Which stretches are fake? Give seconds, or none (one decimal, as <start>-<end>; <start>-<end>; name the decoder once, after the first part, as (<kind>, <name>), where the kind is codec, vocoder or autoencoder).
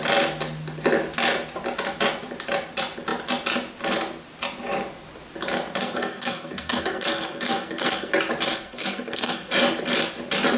5.8-8.1 (codec, SNAC); 8.5-9.5